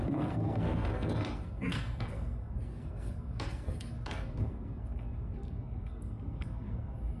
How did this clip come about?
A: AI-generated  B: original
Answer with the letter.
A